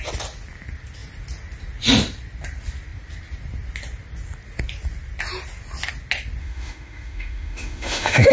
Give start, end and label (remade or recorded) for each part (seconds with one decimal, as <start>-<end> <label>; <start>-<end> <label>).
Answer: 0.0-6.4 recorded; 6.4-8.3 remade